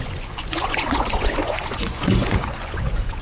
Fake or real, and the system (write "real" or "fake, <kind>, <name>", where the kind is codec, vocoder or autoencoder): fake, vocoder, Vocos